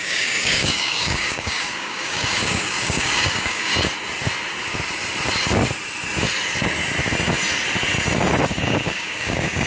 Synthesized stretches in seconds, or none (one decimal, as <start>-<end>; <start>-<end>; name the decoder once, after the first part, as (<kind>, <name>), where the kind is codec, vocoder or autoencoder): 0.0-3.7 (codec, DAC); 8.6-9.7